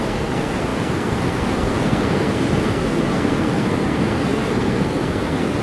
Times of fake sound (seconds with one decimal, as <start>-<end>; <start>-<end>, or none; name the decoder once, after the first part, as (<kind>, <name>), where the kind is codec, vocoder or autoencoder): 0.0-5.6 (codec, SNAC)